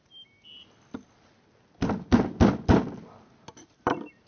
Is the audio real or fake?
real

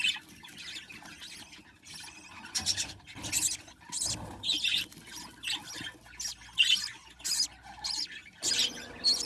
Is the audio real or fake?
real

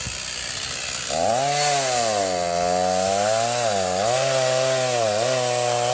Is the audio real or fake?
real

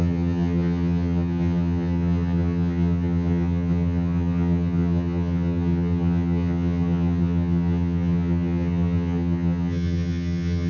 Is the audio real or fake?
fake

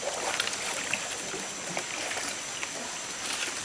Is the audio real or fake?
real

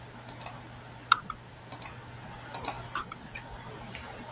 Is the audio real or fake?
real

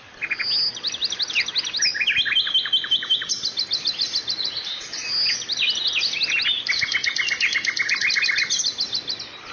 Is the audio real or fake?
real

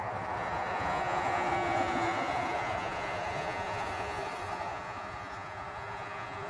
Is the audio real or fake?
fake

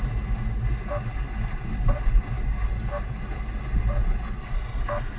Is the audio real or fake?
real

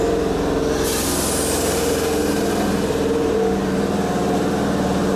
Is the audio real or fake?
fake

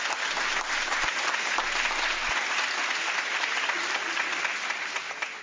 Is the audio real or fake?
real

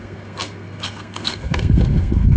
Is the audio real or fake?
fake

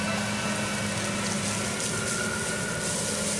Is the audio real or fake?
real